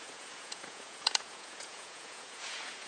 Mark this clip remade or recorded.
remade